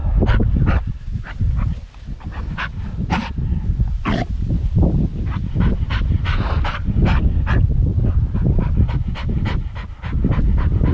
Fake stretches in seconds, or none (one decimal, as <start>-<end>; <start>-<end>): 5.1-7.0; 7.9-8.9